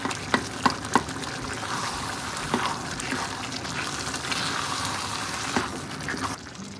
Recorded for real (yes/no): yes